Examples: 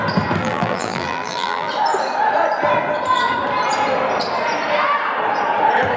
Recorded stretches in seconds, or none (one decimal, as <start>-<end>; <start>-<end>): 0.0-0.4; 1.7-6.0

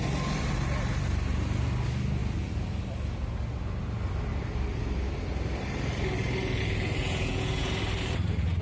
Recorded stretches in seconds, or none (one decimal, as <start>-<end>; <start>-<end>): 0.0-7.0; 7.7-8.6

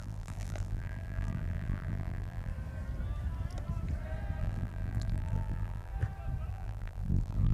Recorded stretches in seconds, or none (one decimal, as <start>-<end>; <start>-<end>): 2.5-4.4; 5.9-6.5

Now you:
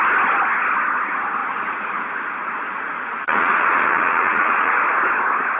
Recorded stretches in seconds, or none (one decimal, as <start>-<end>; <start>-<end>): 0.0-1.4; 4.8-5.6